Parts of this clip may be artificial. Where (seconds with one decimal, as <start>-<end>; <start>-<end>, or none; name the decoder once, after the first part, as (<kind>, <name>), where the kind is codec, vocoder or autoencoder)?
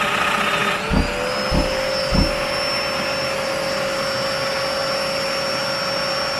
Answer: none